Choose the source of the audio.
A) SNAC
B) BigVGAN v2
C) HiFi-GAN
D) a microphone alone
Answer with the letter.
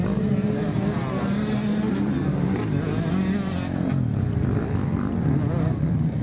D